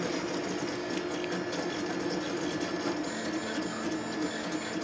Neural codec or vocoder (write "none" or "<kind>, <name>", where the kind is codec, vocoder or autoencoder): none